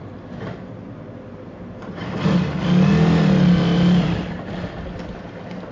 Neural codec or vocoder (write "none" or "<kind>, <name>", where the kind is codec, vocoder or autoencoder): none